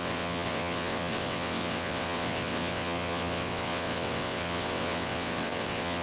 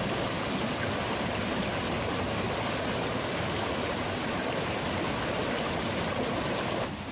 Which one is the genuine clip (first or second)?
second